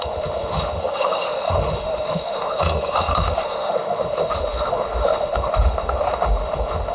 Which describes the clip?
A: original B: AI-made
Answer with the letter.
B